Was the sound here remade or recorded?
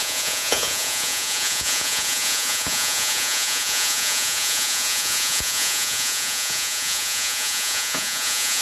remade